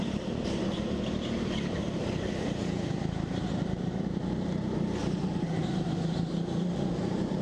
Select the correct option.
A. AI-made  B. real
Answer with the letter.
A